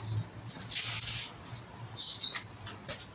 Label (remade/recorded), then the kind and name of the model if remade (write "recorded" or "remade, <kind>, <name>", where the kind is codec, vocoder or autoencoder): recorded